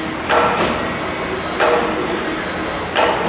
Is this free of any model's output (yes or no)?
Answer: yes